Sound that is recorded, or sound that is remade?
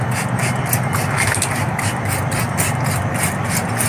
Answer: recorded